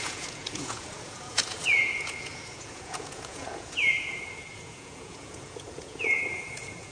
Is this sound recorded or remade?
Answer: remade